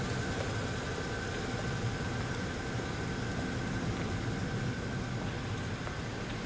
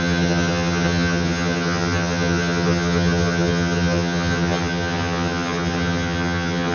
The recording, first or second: first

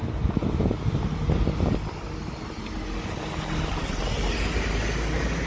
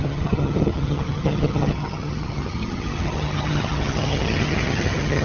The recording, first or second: first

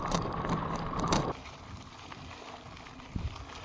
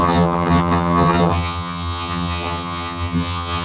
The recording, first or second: first